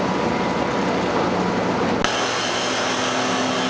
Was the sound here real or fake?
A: real